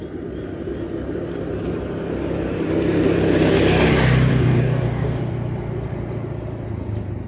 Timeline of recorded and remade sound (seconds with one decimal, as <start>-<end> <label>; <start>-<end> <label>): 0.0-4.3 recorded; 4.3-5.2 remade; 5.2-7.3 recorded